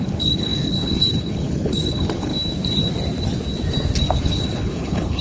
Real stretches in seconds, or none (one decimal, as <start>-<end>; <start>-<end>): 2.3-4.2